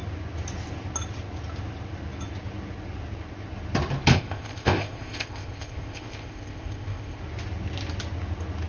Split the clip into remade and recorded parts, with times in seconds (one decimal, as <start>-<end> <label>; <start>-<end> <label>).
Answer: 0.0-4.1 recorded; 4.1-7.2 remade; 7.2-8.7 recorded